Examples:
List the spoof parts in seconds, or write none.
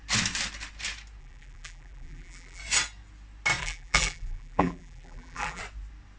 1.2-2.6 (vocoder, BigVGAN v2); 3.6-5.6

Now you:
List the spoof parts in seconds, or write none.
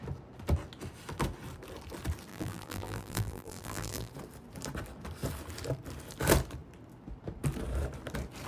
2.3-4.1 (vocoder, BigVGAN v2)